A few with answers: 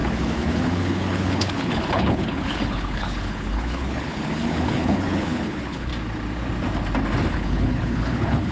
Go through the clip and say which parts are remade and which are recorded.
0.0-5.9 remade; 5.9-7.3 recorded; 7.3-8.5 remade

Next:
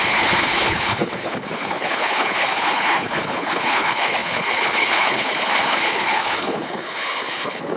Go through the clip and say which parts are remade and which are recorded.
0.0-7.8 remade

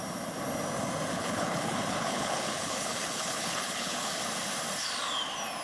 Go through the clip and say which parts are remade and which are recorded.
0.0-1.1 recorded; 1.1-4.2 remade; 4.2-5.6 recorded

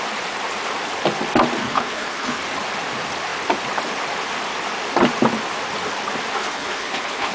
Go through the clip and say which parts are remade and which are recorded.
0.0-1.6 recorded; 1.6-2.4 remade; 2.4-6.4 recorded; 6.4-7.3 remade

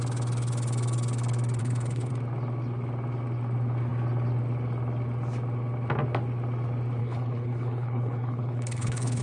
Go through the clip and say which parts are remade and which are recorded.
0.0-1.6 recorded; 1.6-2.1 remade; 2.1-7.0 recorded; 7.0-9.2 remade

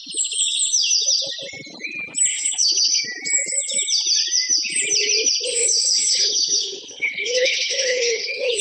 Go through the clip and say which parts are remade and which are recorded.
0.0-2.3 recorded; 2.3-3.0 remade; 3.0-5.5 recorded; 5.5-8.6 remade